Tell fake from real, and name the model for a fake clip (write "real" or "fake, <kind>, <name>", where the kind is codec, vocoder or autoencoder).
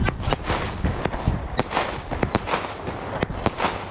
real